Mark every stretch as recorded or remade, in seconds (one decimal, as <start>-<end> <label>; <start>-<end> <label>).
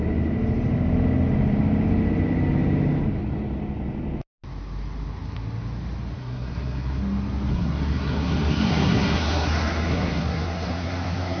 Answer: 0.0-6.2 recorded; 6.2-7.0 remade; 7.0-7.5 recorded; 7.5-11.4 remade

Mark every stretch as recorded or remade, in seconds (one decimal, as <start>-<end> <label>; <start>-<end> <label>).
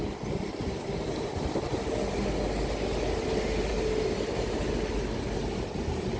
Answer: 0.0-6.2 recorded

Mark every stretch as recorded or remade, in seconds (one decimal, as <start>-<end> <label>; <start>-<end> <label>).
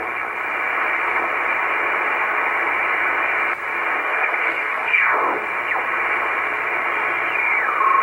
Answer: 0.0-4.0 recorded; 4.0-5.0 remade; 5.0-8.0 recorded